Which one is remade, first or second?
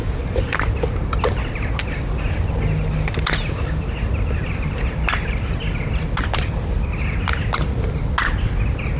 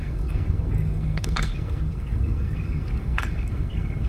second